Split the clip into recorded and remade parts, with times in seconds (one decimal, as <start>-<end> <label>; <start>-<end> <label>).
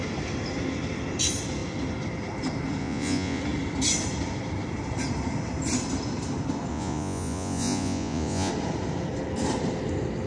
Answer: 0.0-2.8 recorded; 2.8-3.4 remade; 3.4-6.7 recorded; 6.7-8.5 remade; 8.5-10.3 recorded